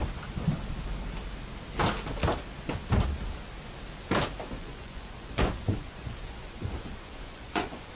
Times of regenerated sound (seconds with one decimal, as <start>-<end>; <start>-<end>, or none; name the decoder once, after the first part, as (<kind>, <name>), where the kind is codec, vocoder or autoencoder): 4.6-7.9 (vocoder, Vocos)